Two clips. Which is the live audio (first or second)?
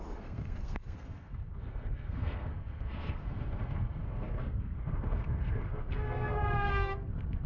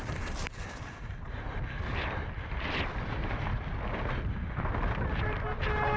second